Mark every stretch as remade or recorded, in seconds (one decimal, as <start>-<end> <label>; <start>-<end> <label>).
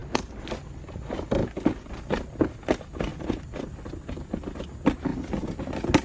0.0-1.4 recorded; 1.4-2.0 remade; 2.0-3.1 recorded; 3.1-3.7 remade; 3.7-5.1 recorded; 5.1-5.6 remade; 5.6-6.0 recorded